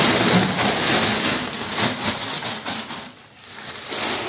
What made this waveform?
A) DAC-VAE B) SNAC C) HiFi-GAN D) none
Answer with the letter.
D